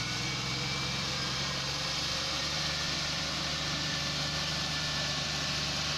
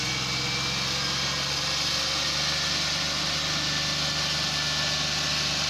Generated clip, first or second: first